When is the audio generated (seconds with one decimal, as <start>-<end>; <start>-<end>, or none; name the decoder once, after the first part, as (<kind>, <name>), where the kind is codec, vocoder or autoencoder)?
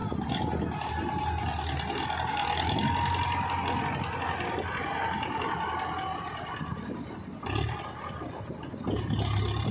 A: none